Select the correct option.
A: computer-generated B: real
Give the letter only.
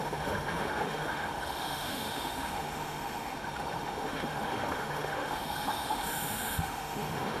A